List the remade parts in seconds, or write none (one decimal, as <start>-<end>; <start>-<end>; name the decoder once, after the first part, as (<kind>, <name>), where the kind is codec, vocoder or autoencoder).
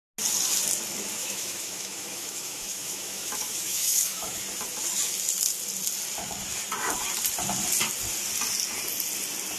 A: 1.2-4.4 (autoencoder, DAC-VAE)